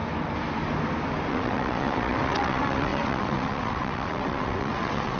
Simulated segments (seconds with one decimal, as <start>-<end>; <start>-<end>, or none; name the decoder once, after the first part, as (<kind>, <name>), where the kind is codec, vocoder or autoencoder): 1.3-5.2 (vocoder, WaveNeXt)